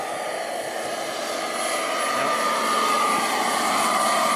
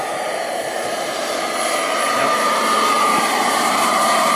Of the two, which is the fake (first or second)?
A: second